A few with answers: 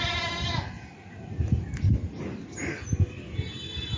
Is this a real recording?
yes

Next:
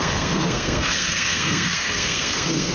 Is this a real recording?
no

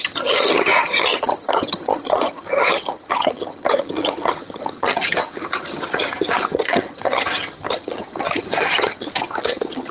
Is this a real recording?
no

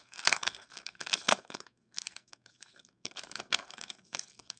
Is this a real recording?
no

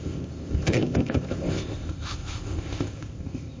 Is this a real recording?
no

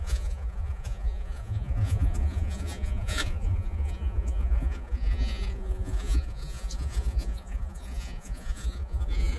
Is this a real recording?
no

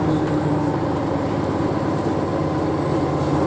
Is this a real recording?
yes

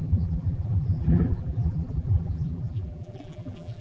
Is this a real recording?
no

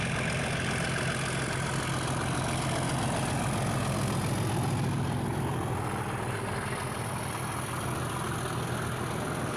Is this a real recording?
yes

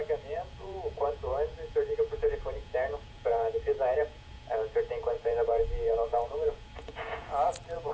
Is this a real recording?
no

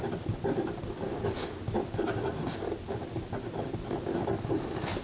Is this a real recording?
yes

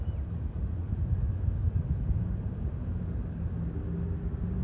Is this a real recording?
yes